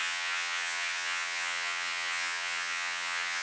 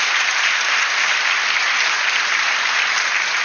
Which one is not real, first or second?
first